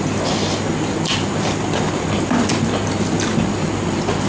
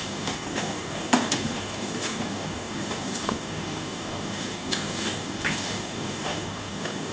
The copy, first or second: second